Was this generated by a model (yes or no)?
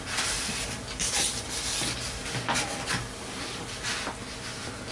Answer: no